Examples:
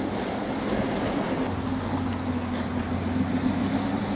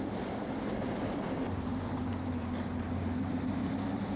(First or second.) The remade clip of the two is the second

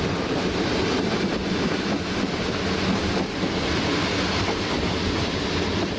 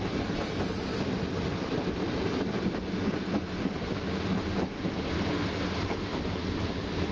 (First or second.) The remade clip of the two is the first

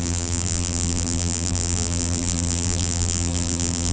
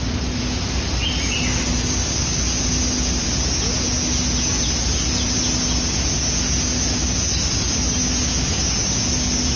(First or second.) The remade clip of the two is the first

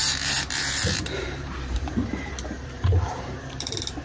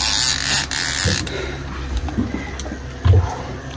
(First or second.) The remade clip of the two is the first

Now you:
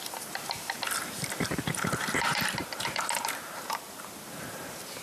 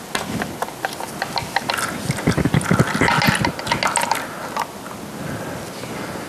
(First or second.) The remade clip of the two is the first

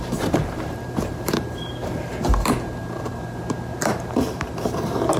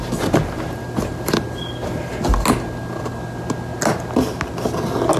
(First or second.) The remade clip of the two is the first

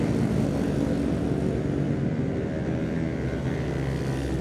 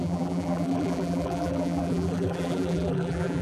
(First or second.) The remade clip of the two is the second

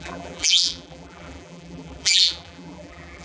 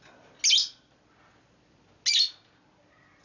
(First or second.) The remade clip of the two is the first